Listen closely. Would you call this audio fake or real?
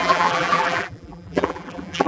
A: fake